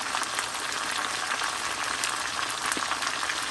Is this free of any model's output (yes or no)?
yes